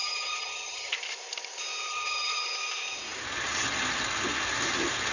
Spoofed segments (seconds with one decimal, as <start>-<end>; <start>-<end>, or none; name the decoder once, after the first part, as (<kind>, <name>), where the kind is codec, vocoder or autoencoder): 0.0-0.9 (vocoder, HiFi-GAN); 1.9-2.4